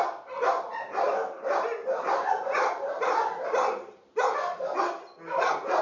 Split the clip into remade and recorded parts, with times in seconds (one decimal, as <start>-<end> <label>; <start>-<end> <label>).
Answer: 0.0-1.8 recorded; 1.8-4.1 remade; 4.1-5.8 recorded